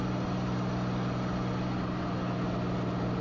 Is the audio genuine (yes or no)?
yes